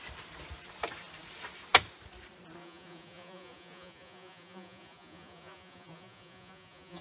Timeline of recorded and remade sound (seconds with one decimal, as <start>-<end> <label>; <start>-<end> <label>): 0.0-2.6 recorded; 2.6-7.0 remade